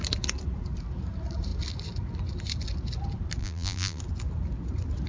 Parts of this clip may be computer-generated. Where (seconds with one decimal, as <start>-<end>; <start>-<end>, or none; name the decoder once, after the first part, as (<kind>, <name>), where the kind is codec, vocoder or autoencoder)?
3.4-4.0 (vocoder, BigVGAN v2)